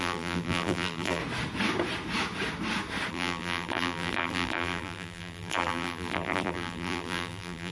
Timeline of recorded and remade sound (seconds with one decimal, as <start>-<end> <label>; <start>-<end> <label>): 0.0-1.2 remade; 1.2-3.1 recorded; 3.1-7.7 remade